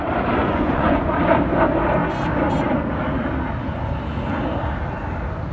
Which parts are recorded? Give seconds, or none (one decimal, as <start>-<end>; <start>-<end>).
0.0-0.4; 1.1-5.5